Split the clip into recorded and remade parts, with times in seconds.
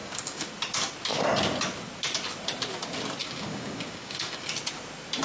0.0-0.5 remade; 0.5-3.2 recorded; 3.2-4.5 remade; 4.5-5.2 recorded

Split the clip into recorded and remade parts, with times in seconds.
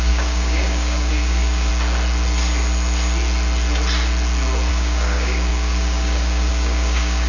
0.0-1.7 remade; 1.7-4.7 recorded; 4.7-7.3 remade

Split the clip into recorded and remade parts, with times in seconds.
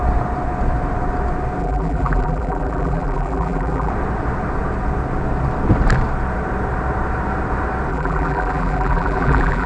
0.0-1.6 recorded; 1.6-3.9 remade; 3.9-7.9 recorded; 7.9-9.7 remade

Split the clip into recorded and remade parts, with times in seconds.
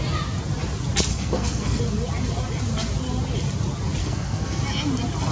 0.0-1.1 recorded; 1.1-1.8 remade; 1.8-4.0 recorded; 4.0-4.6 remade; 4.6-5.3 recorded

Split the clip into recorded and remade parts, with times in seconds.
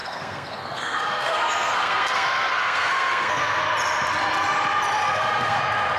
0.0-3.6 remade; 3.6-5.0 recorded; 5.0-5.6 remade; 5.6-6.0 recorded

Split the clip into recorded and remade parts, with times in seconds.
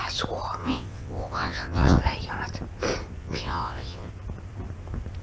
0.0-0.6 recorded; 0.6-2.0 remade; 2.0-3.2 recorded; 3.2-4.1 remade; 4.1-5.2 recorded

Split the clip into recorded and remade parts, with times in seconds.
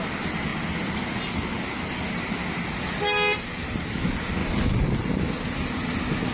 0.0-4.4 recorded; 4.4-5.2 remade; 5.2-6.3 recorded